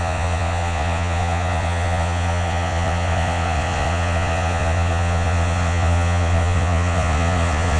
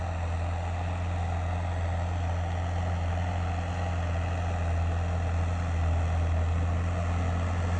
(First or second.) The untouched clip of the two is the second